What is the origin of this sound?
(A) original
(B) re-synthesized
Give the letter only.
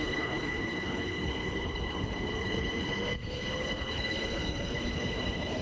B